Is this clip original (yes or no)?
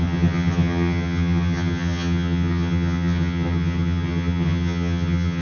no